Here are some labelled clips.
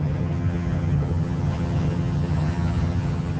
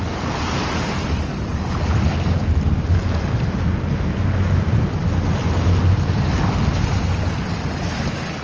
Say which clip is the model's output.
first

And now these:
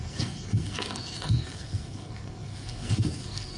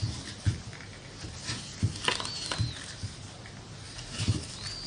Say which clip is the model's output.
first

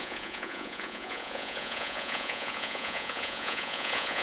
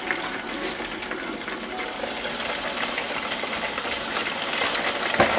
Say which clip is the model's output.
first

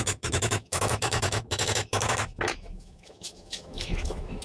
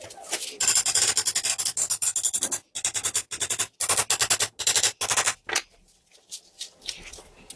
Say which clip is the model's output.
first